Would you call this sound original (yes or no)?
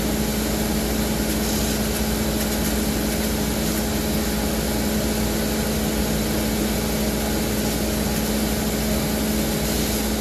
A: yes